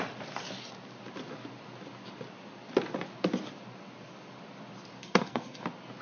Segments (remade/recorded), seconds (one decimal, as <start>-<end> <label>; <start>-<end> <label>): 0.0-5.0 recorded; 5.0-5.6 remade; 5.6-6.0 recorded

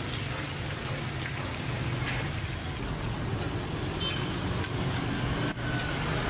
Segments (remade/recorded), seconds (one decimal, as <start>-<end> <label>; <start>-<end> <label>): 0.0-6.3 recorded

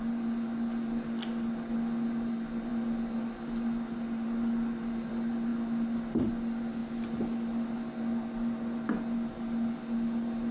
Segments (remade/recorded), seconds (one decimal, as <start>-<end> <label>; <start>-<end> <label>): 0.0-10.5 recorded